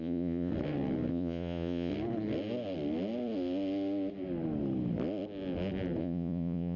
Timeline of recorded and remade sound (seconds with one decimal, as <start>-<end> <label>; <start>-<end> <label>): 0.0-0.5 remade; 0.5-1.1 recorded; 1.1-1.9 remade; 1.9-6.0 recorded; 6.0-6.8 remade